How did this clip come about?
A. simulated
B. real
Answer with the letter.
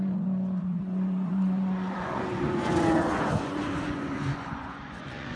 A